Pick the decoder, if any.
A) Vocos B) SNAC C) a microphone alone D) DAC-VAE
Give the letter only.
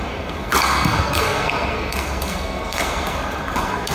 B